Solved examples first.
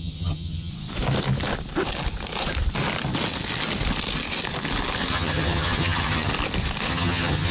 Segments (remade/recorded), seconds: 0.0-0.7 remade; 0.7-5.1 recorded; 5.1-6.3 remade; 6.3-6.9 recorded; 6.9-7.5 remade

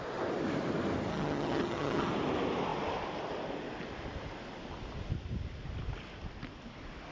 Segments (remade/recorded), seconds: 0.0-1.1 recorded; 1.1-2.1 remade; 2.1-7.1 recorded

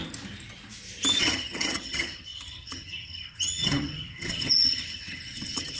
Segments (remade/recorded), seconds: 0.0-1.2 recorded; 1.2-5.8 remade